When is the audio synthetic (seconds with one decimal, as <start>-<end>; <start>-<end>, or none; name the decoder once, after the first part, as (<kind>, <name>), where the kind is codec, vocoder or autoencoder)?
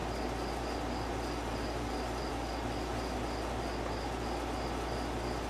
none